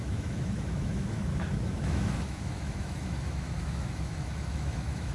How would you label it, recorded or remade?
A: remade